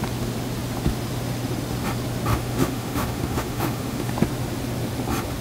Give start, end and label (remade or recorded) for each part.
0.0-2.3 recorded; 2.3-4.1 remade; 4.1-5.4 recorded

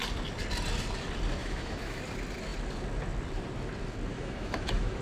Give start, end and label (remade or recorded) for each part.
0.0-1.4 recorded; 1.4-2.0 remade; 2.0-4.1 recorded; 4.1-5.0 remade

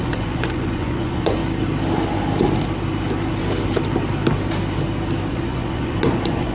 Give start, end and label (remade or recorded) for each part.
0.0-1.4 remade; 1.4-5.3 recorded; 5.3-6.5 remade

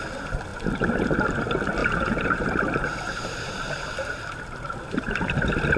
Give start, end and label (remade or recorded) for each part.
0.0-0.5 recorded; 0.5-1.2 remade; 1.2-1.8 recorded; 1.8-5.3 remade; 5.3-5.8 recorded

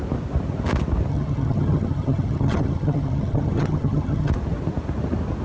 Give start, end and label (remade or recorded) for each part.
0.0-1.1 recorded; 1.1-4.3 remade; 4.3-5.4 recorded

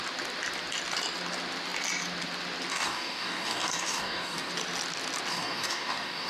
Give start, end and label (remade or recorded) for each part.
0.0-2.7 recorded; 2.7-4.5 remade; 4.5-5.3 recorded; 5.3-6.3 remade